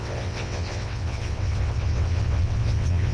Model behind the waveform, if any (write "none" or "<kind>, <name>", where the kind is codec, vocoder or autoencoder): vocoder, WaveNeXt